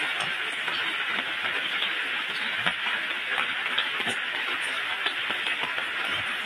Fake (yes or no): no